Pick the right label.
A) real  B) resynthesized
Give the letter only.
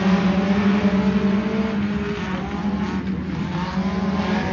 A